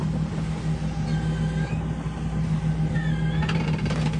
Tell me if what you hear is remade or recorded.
recorded